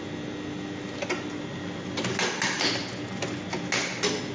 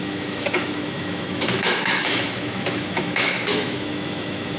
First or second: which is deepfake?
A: second